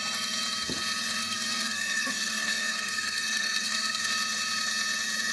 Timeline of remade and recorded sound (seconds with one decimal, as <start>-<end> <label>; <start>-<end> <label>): 0.0-1.2 recorded; 1.2-4.1 remade; 4.1-5.3 recorded